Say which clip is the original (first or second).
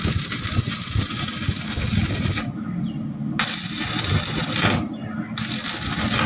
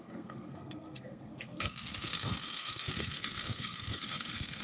first